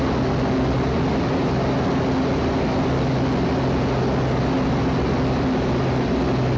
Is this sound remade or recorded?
recorded